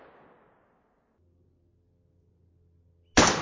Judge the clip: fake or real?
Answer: real